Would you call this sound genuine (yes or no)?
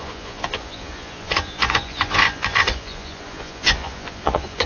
no